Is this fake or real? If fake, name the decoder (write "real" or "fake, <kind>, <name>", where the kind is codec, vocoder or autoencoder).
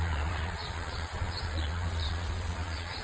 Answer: fake, vocoder, Vocos